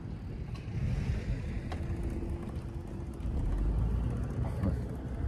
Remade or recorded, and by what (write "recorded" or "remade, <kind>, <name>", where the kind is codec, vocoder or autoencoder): recorded